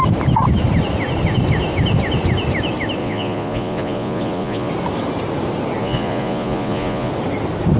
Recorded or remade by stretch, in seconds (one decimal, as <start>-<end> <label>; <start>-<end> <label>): 0.0-3.0 recorded; 3.0-4.7 remade; 4.7-5.8 recorded; 5.8-7.1 remade; 7.1-7.8 recorded